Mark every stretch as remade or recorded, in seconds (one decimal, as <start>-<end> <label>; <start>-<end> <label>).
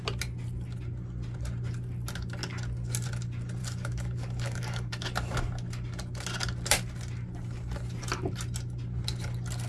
0.0-3.6 recorded; 3.6-4.9 remade; 4.9-9.7 recorded